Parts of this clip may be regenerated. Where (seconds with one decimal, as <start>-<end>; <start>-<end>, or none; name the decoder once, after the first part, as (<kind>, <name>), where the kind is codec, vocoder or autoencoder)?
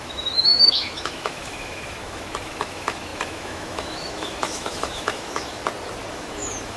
0.0-5.6 (autoencoder, DAC-VAE); 6.1-6.8